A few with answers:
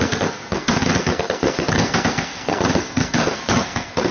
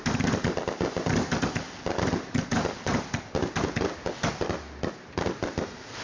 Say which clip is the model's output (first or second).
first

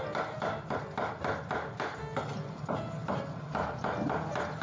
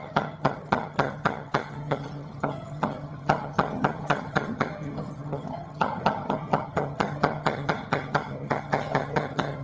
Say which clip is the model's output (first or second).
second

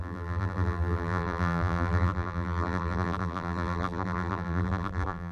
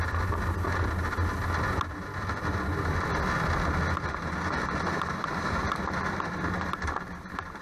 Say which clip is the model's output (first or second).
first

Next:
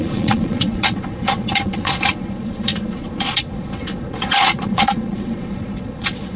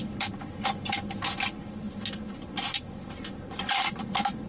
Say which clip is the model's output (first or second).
first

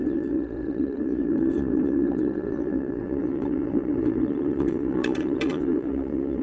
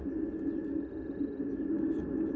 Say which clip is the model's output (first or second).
first